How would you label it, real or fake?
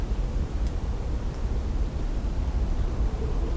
fake